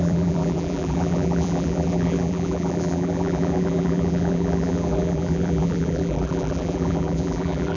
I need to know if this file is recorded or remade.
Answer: remade